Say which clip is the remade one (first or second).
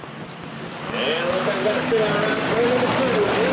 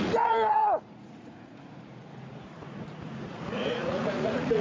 second